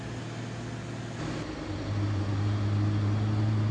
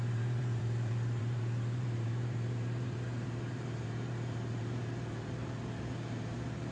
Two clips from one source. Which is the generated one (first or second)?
second